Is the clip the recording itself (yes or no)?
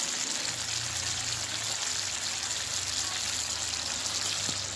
yes